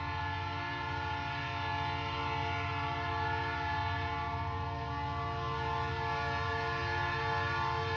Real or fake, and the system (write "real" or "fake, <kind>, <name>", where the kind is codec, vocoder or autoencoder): real